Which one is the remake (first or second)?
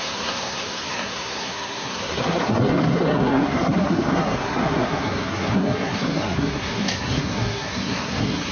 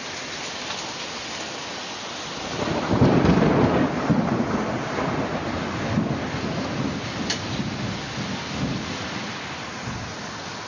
first